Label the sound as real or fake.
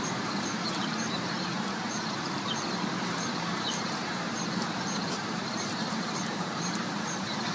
fake